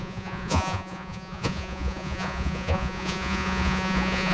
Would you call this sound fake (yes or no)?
yes